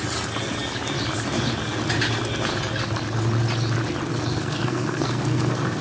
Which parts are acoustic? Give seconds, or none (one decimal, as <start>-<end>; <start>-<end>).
0.0-4.1